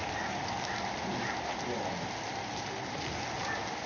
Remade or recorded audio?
recorded